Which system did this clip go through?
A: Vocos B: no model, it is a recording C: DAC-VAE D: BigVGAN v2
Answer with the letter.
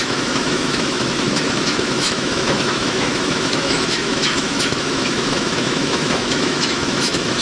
C